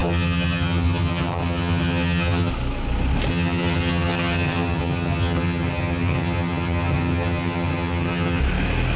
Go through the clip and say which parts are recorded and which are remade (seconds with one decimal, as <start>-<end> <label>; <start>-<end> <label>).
0.0-2.5 remade; 2.5-3.3 recorded; 3.3-8.4 remade; 8.4-9.0 recorded